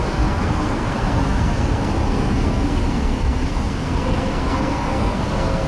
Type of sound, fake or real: fake